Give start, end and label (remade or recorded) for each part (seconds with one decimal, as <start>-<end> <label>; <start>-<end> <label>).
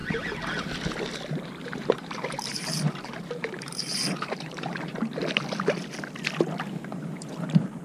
0.0-1.3 recorded; 1.3-5.2 remade; 5.2-6.9 recorded; 6.9-7.8 remade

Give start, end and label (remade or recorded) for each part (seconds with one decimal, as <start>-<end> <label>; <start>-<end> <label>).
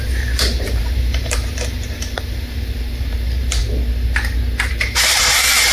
0.0-3.6 remade; 3.6-4.7 recorded; 4.7-5.7 remade